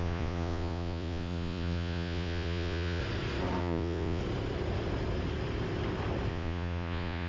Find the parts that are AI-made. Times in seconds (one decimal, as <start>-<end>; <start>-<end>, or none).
0.0-3.0; 3.6-4.2; 6.3-7.3